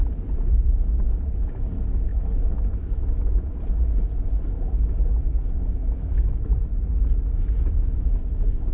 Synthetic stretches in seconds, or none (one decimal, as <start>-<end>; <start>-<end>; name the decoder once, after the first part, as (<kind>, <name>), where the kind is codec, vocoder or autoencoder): 2.1-3.5 (autoencoder, DAC-VAE); 5.8-6.6